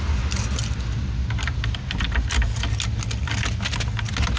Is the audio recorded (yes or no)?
yes